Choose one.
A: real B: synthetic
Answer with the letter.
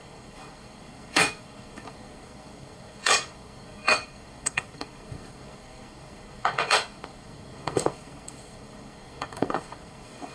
B